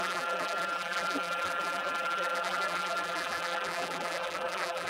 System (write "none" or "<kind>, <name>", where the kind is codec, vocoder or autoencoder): vocoder, BigVGAN v2